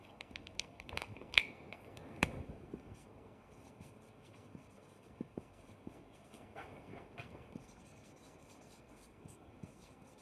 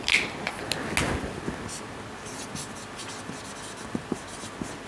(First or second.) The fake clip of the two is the first